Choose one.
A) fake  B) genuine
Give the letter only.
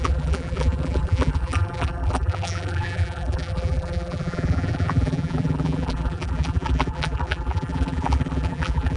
A